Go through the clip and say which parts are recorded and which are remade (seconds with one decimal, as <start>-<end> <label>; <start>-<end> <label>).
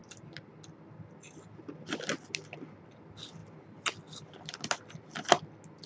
0.0-5.9 recorded